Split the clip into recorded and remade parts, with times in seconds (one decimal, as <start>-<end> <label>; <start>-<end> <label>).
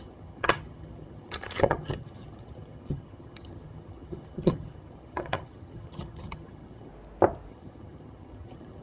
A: 0.0-6.9 remade; 6.9-7.5 recorded; 7.5-8.8 remade